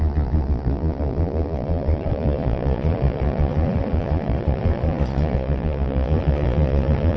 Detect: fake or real fake